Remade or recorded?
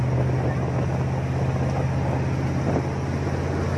recorded